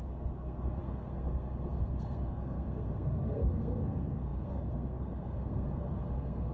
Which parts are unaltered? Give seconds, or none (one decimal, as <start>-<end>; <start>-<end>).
none